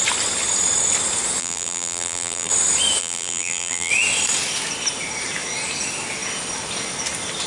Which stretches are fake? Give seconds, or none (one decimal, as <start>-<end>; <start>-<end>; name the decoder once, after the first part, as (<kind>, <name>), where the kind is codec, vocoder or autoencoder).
1.4-2.5 (vocoder, BigVGAN v2); 3.0-3.9